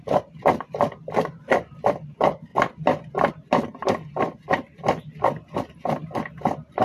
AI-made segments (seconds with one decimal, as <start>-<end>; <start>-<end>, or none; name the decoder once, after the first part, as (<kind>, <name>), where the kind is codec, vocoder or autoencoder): none